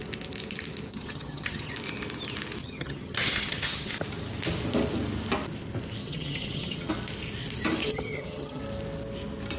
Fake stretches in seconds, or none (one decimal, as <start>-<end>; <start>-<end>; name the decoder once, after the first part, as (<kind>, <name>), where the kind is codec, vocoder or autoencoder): 0.9-1.7 (vocoder, HiFi-GAN); 2.6-3.9; 6.0-6.9; 7.8-8.6